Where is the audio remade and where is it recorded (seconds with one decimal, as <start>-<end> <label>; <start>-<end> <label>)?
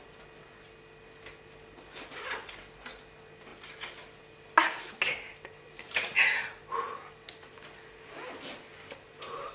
0.0-9.5 recorded